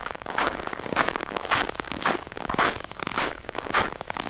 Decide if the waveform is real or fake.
fake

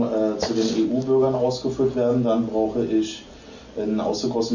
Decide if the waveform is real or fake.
real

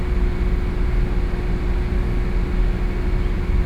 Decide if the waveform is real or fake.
real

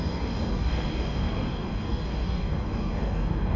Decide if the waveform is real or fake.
fake